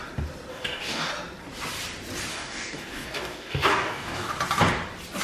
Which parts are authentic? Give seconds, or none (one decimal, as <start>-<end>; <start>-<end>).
0.0-0.5; 1.1-2.3; 4.3-5.2